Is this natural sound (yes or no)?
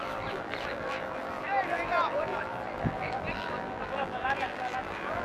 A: no